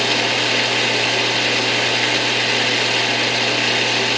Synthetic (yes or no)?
no